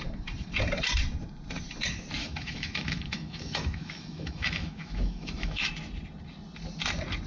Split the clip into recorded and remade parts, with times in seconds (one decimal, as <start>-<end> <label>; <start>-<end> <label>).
0.0-2.2 recorded; 2.2-5.7 remade; 5.7-7.3 recorded

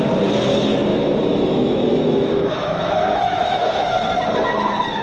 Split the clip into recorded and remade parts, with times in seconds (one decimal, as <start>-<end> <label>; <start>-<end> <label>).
0.0-0.9 recorded; 0.9-3.9 remade; 3.9-5.0 recorded

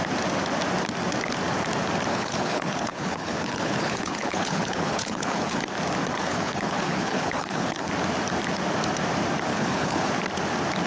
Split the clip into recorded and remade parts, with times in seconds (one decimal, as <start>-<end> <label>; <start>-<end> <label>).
0.0-2.1 recorded; 2.1-5.6 remade; 5.6-6.2 recorded; 6.2-7.9 remade; 7.9-9.5 recorded; 9.5-10.1 remade; 10.1-10.9 recorded

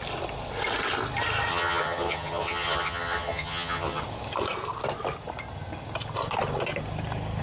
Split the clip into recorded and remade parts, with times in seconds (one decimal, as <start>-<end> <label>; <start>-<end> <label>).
0.0-1.5 recorded; 1.5-4.0 remade; 4.0-7.4 recorded

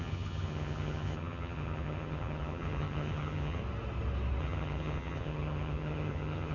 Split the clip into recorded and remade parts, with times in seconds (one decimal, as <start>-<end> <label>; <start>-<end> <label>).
0.0-3.6 remade; 3.6-4.4 recorded; 4.4-6.5 remade

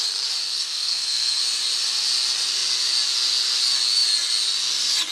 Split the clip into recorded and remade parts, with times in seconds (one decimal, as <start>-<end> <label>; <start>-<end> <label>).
0.0-0.4 recorded; 0.4-1.4 remade; 1.4-5.1 recorded

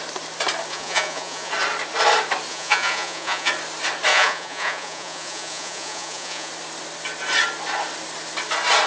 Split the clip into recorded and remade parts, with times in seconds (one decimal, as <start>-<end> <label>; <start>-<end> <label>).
0.0-0.7 recorded; 0.7-1.5 remade; 1.5-2.5 recorded; 2.5-3.5 remade; 3.5-4.1 recorded; 4.1-6.5 remade; 6.5-8.9 recorded

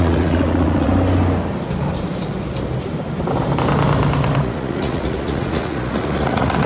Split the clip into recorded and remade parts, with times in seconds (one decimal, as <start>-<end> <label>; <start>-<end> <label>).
0.0-0.9 remade; 0.9-4.4 recorded; 4.4-6.7 remade